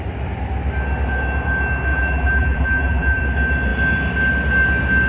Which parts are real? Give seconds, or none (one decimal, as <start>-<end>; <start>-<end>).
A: 0.0-1.9; 3.2-5.1